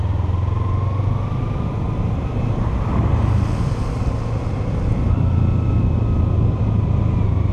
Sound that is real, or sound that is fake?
real